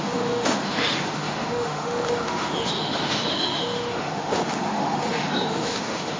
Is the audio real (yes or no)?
no